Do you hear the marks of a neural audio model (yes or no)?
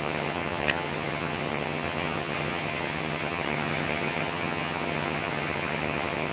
yes